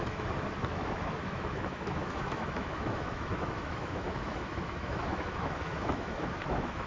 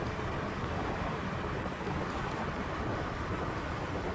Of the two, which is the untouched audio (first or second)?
second